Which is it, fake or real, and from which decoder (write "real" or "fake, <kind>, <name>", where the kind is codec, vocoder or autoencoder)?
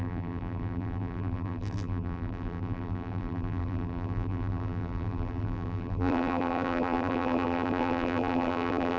fake, vocoder, BigVGAN v2